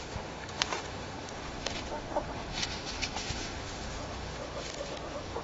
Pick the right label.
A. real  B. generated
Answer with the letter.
B